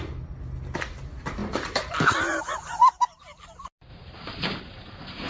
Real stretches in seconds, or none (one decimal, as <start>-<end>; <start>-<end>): 0.0-1.4; 2.4-2.8; 3.4-3.9